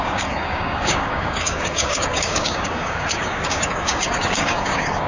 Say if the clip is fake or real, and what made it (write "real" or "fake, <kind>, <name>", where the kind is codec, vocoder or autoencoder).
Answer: fake, codec, DAC